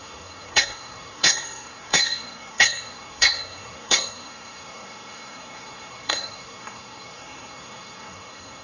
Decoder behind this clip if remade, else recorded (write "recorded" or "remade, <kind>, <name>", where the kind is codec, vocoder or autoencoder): remade, codec, SNAC